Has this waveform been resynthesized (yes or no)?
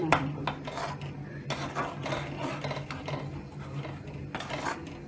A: no